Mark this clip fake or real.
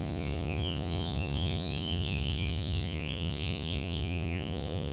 fake